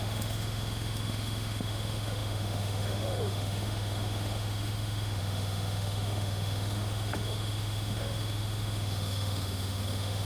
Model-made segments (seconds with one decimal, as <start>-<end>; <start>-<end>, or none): 0.0-10.2

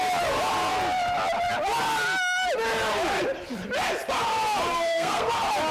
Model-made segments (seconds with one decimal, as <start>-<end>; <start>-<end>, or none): 4.7-5.3

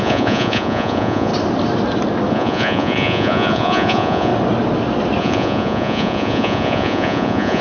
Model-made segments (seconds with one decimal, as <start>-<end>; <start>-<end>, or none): 0.0-1.3; 2.3-4.3; 5.2-7.6

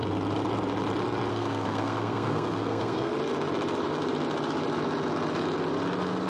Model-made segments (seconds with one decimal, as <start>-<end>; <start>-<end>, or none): 1.3-3.1

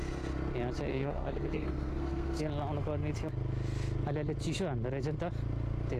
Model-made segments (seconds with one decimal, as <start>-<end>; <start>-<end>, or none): 0.9-2.4

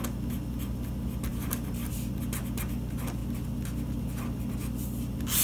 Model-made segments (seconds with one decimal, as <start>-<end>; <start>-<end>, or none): 1.3-1.9

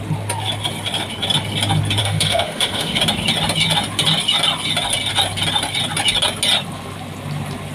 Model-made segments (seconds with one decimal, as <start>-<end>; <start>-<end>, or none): 2.0-3.0